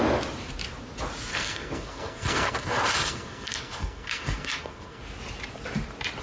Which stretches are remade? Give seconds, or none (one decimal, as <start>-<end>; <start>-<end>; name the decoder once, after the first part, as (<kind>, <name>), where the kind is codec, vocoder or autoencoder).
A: 1.3-5.0 (codec, SNAC)